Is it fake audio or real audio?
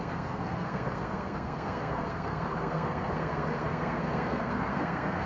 fake